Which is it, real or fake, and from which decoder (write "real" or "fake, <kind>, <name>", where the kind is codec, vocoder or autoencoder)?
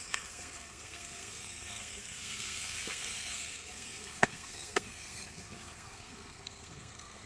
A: fake, codec, SNAC